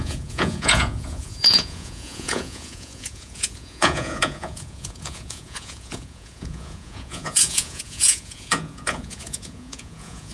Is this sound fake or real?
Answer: fake